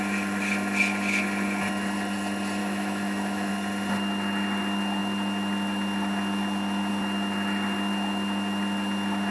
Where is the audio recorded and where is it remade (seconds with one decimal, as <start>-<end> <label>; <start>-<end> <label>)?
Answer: 0.0-2.6 recorded; 2.6-3.5 remade; 3.5-9.3 recorded